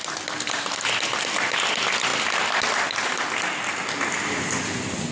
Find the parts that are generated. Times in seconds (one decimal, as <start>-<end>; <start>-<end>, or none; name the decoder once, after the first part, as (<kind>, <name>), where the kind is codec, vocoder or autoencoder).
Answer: none